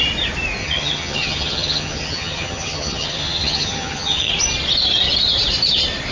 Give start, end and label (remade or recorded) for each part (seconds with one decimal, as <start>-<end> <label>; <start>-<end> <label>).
0.0-0.6 recorded; 0.6-4.3 remade; 4.3-6.1 recorded